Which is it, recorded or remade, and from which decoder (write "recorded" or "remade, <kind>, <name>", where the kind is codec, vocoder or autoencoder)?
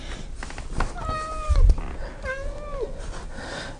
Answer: recorded